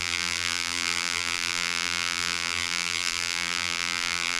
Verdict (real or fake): fake